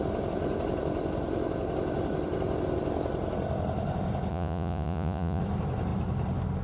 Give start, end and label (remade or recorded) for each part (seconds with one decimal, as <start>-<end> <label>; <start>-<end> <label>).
0.0-4.3 recorded; 4.3-5.4 remade; 5.4-6.6 recorded